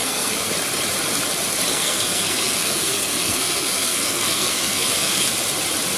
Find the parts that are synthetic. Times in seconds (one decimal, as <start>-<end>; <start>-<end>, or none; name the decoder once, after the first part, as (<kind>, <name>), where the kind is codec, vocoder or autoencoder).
0.0-0.5 (codec, SNAC); 1.7-5.3

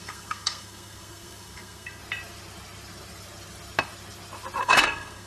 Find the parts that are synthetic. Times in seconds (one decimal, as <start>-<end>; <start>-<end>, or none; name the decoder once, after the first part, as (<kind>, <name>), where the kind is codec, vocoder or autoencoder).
0.0-2.0 (codec, SNAC); 4.6-5.3